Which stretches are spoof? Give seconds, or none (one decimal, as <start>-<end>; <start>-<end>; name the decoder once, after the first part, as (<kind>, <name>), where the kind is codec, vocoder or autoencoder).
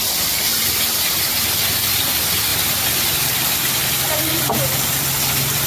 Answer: none